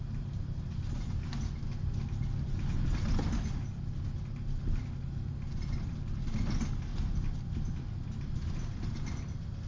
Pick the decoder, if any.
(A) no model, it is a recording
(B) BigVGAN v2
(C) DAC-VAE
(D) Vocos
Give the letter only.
A